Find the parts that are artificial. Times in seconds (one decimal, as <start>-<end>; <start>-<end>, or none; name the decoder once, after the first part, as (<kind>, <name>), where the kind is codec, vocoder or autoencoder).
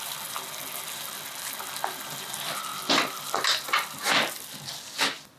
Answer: none